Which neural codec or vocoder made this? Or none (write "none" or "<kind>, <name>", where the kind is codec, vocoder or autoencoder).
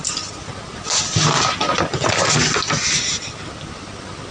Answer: none